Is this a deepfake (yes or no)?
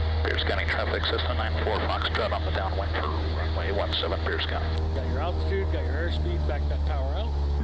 no